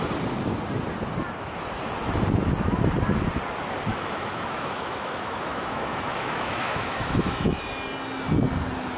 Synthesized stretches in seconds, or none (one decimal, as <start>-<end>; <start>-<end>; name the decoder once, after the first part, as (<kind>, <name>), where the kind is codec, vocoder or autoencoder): 3.9-7.6 (autoencoder, DAC-VAE)